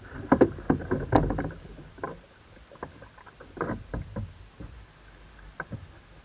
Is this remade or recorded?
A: recorded